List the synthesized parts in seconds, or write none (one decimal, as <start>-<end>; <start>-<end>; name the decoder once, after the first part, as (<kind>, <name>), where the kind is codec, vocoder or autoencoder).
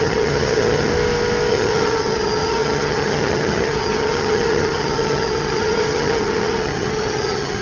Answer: 0.0-0.9 (vocoder, HiFi-GAN); 1.5-7.6